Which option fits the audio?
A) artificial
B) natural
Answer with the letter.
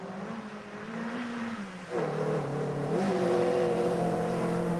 A